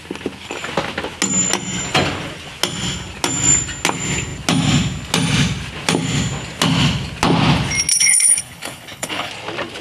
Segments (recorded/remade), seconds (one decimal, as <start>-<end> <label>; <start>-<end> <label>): 0.0-7.9 recorded; 7.9-9.3 remade; 9.3-9.8 recorded